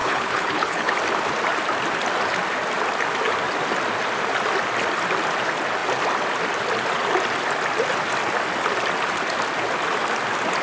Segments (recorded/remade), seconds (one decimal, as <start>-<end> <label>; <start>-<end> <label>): 0.0-0.9 remade; 0.9-10.6 recorded